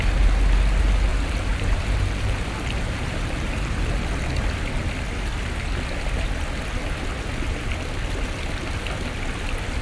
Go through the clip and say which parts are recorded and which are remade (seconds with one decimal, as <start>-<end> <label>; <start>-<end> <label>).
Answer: 0.0-1.1 recorded; 1.1-4.0 remade; 4.0-9.8 recorded